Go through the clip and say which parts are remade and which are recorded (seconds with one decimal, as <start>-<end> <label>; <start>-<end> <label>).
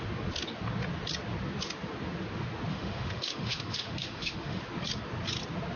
0.0-2.7 recorded; 2.7-4.6 remade; 4.6-5.8 recorded